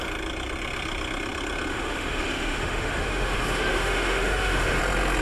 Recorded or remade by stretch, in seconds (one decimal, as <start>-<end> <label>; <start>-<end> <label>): 0.0-1.7 recorded; 1.7-4.8 remade; 4.8-5.2 recorded